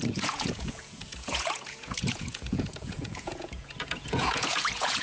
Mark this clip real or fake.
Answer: fake